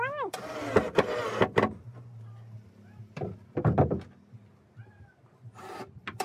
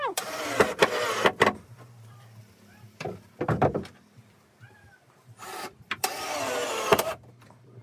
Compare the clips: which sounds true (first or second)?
first